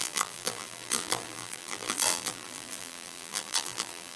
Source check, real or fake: fake